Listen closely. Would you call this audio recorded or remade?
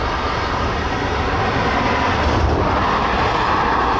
recorded